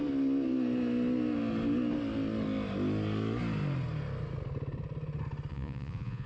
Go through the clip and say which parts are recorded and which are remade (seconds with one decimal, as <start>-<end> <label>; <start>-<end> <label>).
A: 0.0-5.5 recorded; 5.5-6.3 remade

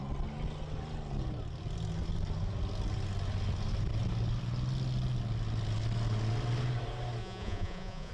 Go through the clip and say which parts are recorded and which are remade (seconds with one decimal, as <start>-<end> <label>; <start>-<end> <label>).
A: 0.0-7.2 recorded; 7.2-8.1 remade